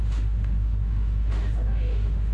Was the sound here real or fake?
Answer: fake